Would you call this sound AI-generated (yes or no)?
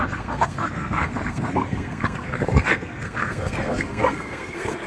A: yes